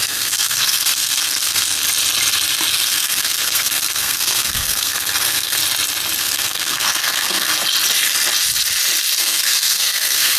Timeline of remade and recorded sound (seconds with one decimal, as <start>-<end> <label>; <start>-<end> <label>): 0.0-1.8 remade; 1.8-2.7 recorded; 2.7-5.6 remade; 5.6-6.2 recorded; 6.2-7.5 remade; 7.5-9.2 recorded; 9.2-10.4 remade